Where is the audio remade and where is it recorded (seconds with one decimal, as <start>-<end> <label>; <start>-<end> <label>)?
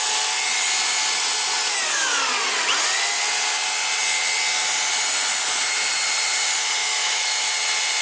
0.0-6.8 recorded; 6.8-7.5 remade; 7.5-8.0 recorded